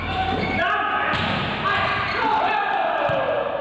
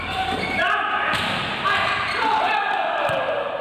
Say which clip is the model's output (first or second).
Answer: second